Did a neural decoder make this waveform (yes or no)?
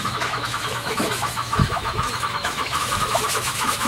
yes